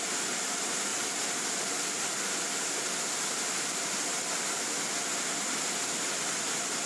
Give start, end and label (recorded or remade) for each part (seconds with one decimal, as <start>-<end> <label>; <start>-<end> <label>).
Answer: 0.0-6.9 recorded